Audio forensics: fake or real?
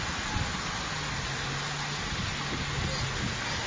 real